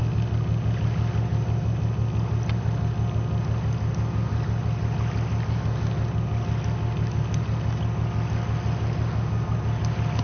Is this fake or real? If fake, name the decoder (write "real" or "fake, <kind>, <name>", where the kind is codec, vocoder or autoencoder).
real